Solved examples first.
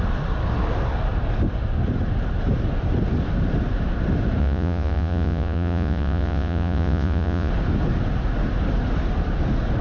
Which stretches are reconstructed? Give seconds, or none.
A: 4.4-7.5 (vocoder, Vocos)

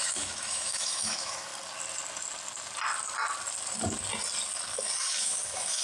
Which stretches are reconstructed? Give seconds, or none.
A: 0.0-1.5 (autoencoder, DAC-VAE); 5.0-5.8

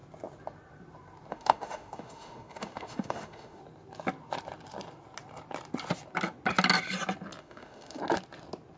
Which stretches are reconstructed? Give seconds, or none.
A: 1.3-3.6 (autoencoder, DAC-VAE); 7.4-8.0

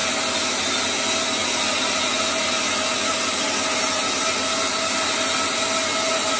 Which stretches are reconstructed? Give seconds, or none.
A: none

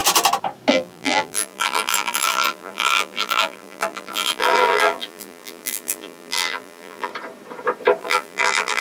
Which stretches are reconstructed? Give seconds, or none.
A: 0.7-7.1 (vocoder, BigVGAN v2); 8.0-8.8